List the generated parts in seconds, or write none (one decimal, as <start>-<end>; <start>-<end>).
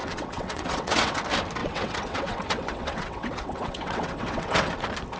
0.0-1.2; 1.6-4.7